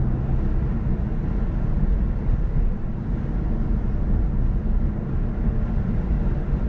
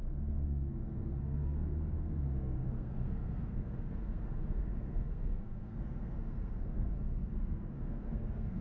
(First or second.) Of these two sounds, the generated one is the second